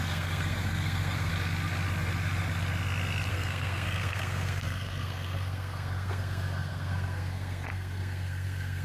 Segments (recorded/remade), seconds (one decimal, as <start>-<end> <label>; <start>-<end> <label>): 0.0-1.3 remade; 1.3-3.3 recorded; 3.3-8.8 remade